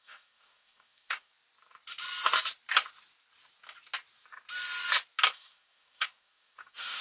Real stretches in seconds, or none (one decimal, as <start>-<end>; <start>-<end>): 1.3-5.3